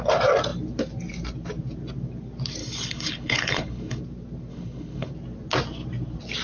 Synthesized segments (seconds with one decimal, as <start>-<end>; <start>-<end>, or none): 2.6-4.0; 4.5-5.1